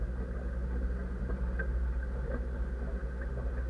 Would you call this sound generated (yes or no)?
no